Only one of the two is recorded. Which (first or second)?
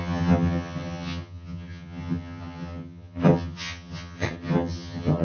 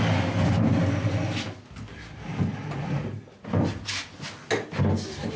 second